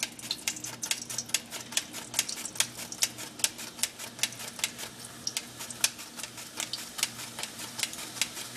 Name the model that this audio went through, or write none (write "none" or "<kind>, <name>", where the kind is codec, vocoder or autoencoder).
none